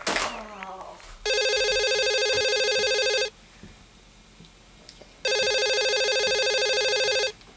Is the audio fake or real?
real